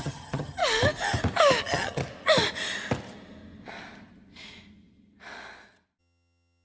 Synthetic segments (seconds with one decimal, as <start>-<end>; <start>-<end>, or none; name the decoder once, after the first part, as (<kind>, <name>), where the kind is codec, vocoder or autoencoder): 0.0-0.6 (vocoder, HiFi-GAN); 1.6-2.0; 6.0-6.6